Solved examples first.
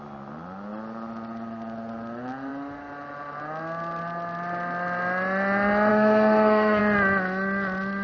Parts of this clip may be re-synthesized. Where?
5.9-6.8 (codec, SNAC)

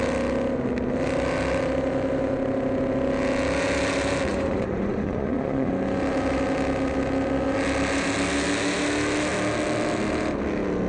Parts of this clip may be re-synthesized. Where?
4.3-5.7 (vocoder, Vocos)

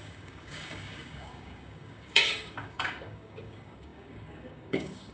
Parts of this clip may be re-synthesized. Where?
0.0-5.1 (codec, DAC)

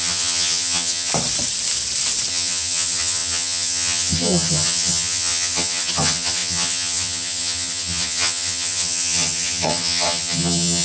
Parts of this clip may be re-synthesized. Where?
0.0-1.1 (vocoder, HiFi-GAN); 2.3-10.8

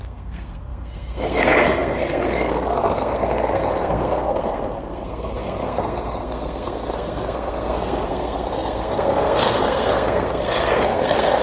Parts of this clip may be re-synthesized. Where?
0.0-11.4 (codec, SNAC)

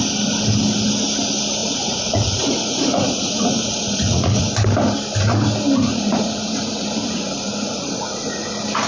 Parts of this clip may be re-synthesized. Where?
1.6-4.5 (vocoder, Vocos); 5.9-8.5